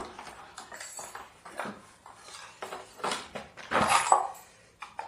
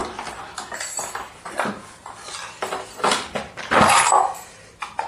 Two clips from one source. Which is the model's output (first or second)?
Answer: first